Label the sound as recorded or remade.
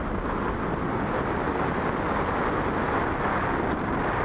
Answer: recorded